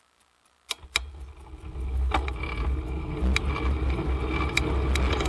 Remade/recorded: recorded